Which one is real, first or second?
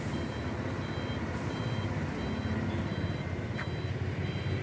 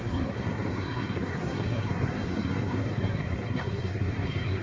first